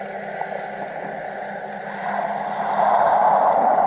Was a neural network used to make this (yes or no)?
no